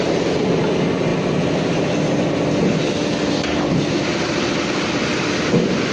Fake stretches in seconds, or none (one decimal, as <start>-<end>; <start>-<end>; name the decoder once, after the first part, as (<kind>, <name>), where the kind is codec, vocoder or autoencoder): none